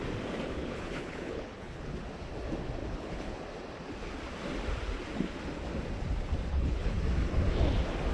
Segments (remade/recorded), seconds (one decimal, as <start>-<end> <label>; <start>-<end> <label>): 0.0-0.6 recorded; 0.6-1.8 remade; 1.8-2.8 recorded; 2.8-3.4 remade; 3.4-6.5 recorded; 6.5-7.0 remade; 7.0-8.1 recorded